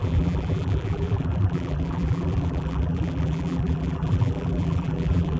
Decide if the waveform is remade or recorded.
remade